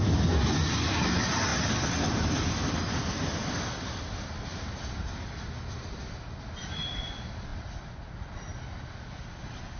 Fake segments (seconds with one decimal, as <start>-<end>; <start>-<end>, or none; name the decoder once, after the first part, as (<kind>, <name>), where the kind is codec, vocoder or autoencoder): 7.5-9.4 (vocoder, BigVGAN v2)